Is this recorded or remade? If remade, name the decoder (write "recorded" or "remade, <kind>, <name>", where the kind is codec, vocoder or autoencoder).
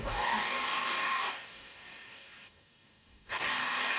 remade, codec, DAC